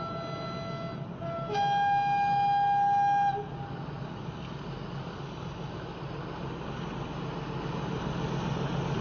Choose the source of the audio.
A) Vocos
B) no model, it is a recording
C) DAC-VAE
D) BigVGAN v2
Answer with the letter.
B